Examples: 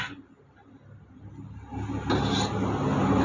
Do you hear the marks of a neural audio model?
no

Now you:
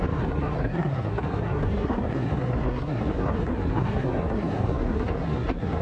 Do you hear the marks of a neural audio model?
yes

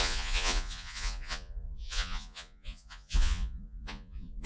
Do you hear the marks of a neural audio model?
yes